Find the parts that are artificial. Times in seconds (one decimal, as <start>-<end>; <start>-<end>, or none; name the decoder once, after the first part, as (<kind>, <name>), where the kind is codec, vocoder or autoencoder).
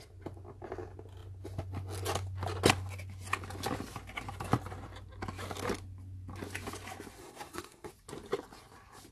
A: 7.2-7.9 (codec, SNAC)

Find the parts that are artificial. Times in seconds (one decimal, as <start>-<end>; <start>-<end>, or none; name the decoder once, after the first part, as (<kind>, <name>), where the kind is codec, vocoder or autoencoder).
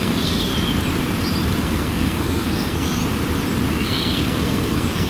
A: 0.0-0.5 (codec, SNAC); 1.6-3.0; 3.7-5.1